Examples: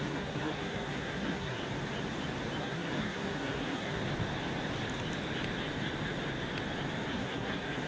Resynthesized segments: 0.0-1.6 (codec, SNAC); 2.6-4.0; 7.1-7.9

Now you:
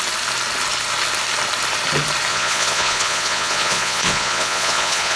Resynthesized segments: 2.3-5.2 (vocoder, Vocos)

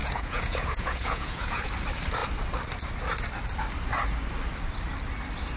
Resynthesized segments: 0.0-1.7 (vocoder, Vocos)

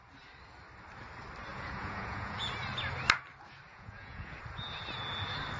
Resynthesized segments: 1.5-2.4 (vocoder, Vocos); 3.7-4.4